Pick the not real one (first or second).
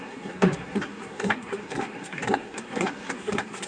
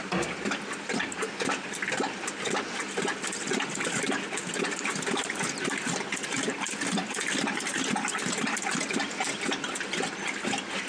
first